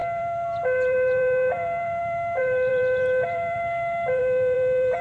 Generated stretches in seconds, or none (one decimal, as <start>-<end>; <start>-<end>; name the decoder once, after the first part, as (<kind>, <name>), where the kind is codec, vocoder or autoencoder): 0.0-5.0 (vocoder, BigVGAN v2)